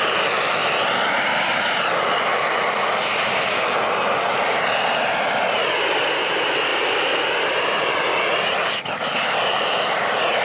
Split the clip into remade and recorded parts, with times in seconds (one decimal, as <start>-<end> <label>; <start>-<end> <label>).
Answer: 0.0-10.4 recorded